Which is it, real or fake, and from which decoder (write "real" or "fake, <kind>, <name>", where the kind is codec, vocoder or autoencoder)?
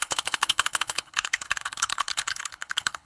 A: fake, codec, HILCodec